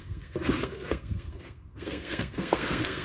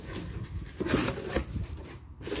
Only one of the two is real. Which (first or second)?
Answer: second